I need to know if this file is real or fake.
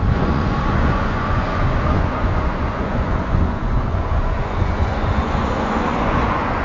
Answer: fake